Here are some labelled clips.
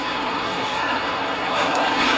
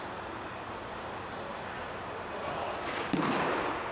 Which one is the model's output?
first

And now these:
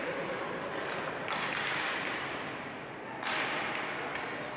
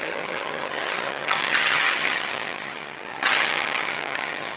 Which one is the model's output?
second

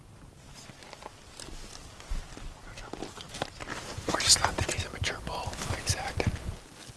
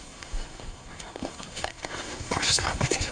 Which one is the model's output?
second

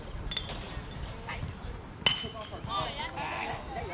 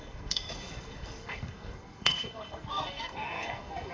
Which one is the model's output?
second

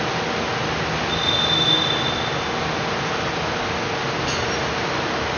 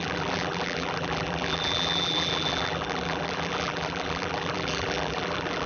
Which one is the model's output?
second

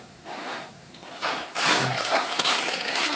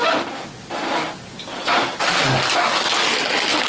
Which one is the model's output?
first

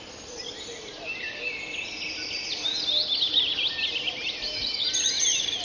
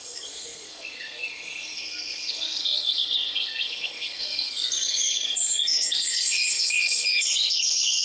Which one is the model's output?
second